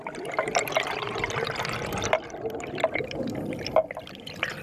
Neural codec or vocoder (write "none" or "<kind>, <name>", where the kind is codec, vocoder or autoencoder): vocoder, BigVGAN v2